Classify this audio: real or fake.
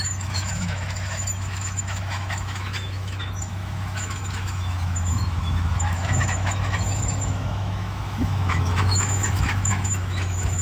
fake